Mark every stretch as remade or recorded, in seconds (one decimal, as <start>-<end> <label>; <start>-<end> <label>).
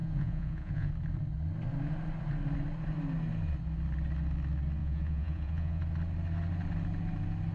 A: 0.0-0.9 remade; 0.9-4.8 recorded; 4.8-5.8 remade; 5.8-7.5 recorded